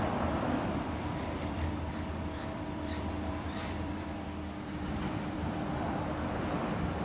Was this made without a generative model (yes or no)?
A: no